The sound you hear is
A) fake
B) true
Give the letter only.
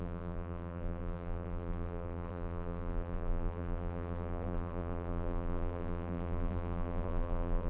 A